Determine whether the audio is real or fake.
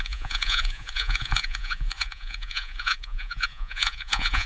fake